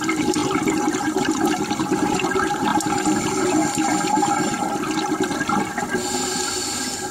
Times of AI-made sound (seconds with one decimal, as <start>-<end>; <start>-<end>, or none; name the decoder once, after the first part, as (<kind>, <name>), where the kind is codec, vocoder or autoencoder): 0.0-2.7 (vocoder, BigVGAN v2)